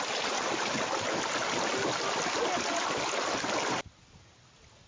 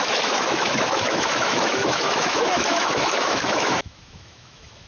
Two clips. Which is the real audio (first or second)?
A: first